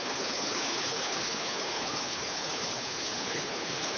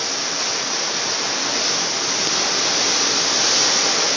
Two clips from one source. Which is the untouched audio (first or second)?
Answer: second